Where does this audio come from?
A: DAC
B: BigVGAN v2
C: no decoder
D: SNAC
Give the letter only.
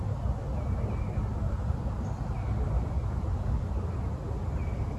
C